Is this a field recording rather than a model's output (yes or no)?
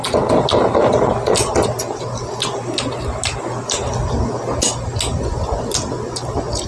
yes